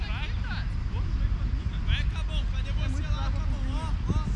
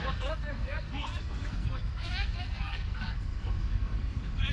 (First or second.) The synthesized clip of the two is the second